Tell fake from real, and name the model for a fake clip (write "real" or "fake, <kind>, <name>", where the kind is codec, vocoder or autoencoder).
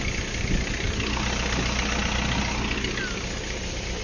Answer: real